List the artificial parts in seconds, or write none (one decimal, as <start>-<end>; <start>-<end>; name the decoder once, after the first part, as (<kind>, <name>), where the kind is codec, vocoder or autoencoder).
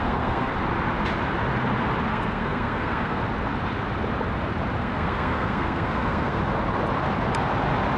0.0-0.5 (codec, SNAC); 2.1-3.2; 4.8-6.4